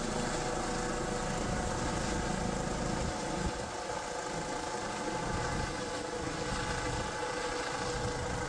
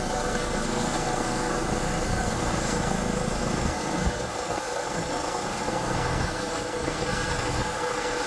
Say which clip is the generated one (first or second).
second